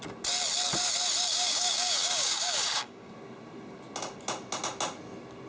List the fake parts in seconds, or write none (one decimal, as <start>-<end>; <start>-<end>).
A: 1.3-3.1